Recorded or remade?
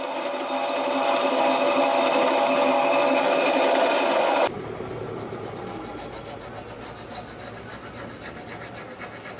recorded